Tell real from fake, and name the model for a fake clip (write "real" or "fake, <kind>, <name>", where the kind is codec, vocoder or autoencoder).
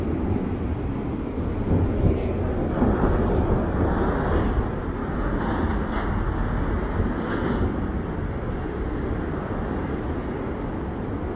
real